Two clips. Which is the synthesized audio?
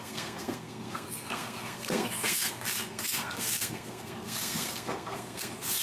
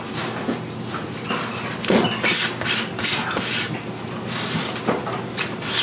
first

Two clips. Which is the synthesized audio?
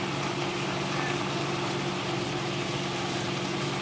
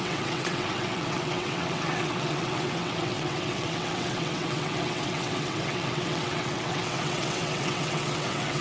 second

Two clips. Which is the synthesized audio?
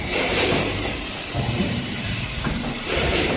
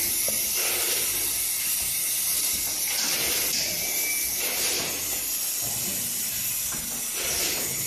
first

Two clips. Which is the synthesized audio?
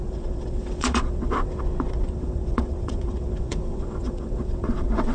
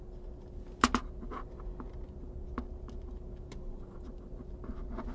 first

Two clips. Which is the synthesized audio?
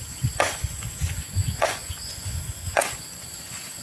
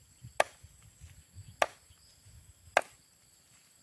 first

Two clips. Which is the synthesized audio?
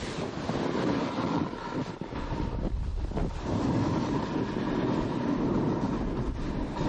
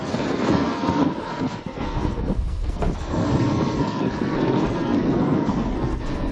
second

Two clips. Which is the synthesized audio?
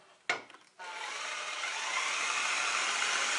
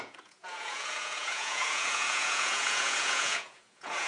second